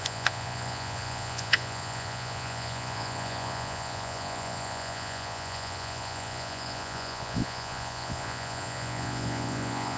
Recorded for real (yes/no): no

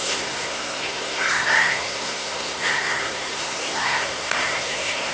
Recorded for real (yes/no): no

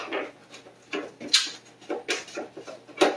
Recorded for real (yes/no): yes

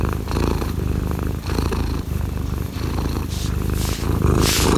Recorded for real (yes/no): no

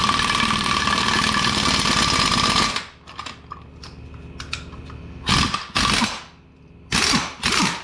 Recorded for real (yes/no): yes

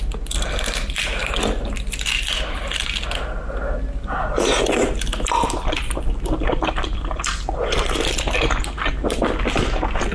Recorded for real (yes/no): yes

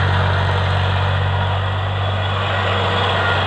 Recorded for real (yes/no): yes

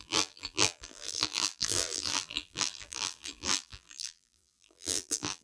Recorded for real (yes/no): no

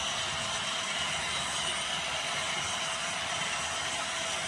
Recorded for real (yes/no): yes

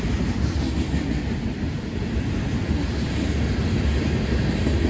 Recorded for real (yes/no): yes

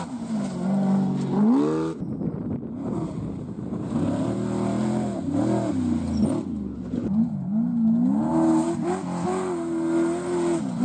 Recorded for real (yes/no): yes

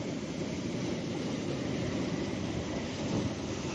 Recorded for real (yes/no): yes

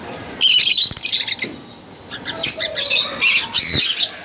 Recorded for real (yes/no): yes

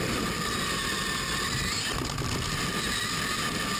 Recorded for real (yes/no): yes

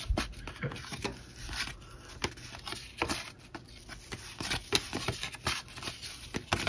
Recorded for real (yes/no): yes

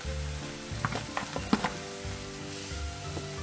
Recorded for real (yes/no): yes